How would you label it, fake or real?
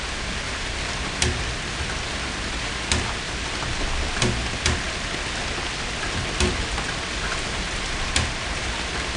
real